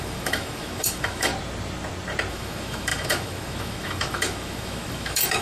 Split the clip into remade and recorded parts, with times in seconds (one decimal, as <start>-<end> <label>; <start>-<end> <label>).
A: 0.0-1.3 remade; 1.3-2.3 recorded; 2.3-5.4 remade